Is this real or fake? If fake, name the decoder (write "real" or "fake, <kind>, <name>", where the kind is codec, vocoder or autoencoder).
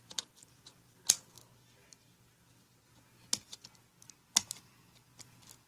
real